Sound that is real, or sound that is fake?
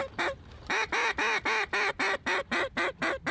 real